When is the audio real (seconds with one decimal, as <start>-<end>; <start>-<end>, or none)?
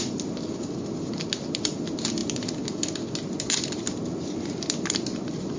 0.0-5.6